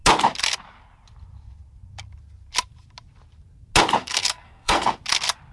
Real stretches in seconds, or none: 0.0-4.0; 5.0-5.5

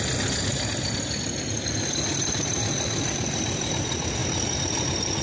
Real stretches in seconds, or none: 0.0-5.2